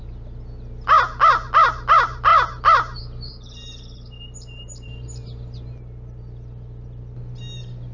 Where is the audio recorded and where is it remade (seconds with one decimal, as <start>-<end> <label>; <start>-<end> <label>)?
0.0-7.9 recorded